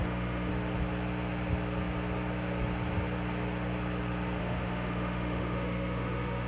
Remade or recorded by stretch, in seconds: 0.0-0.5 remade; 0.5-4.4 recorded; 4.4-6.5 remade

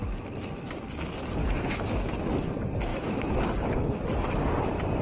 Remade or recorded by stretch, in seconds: 0.0-1.4 recorded; 1.4-2.1 remade; 2.1-2.9 recorded; 2.9-3.4 remade; 3.4-5.0 recorded

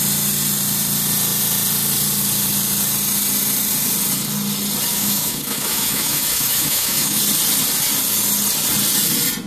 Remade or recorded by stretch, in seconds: 0.0-4.9 recorded; 4.9-7.2 remade; 7.2-9.5 recorded

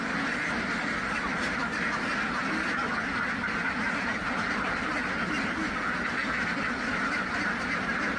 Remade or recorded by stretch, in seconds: 0.0-8.2 recorded

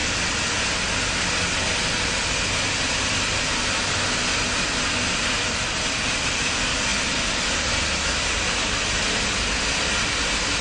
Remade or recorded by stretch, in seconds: 0.0-10.6 recorded

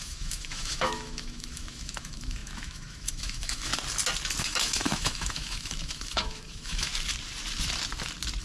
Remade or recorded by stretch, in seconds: 0.0-3.7 remade; 3.7-4.4 recorded; 4.4-6.9 remade; 6.9-8.4 recorded